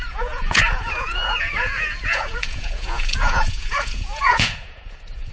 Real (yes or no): no